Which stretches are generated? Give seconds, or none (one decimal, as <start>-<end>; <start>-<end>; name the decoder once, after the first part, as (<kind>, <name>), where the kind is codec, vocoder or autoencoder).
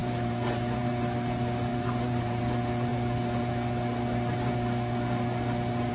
0.0-0.9 (vocoder, BigVGAN v2); 1.7-2.4